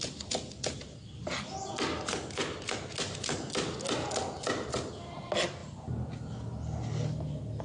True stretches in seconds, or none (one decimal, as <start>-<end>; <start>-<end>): 0.0-7.6